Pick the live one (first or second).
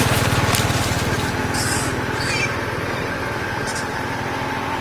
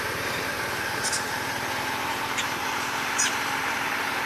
first